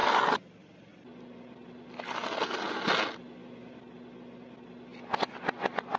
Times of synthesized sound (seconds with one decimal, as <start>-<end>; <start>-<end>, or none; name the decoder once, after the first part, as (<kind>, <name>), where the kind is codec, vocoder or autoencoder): none